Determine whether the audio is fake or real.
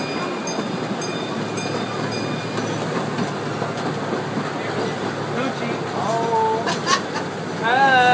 real